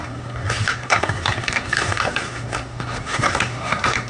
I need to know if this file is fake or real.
fake